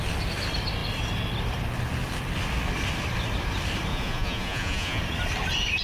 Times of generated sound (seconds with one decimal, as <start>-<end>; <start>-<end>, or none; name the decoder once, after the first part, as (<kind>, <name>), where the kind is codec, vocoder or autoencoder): 3.9-5.0 (vocoder, Vocos)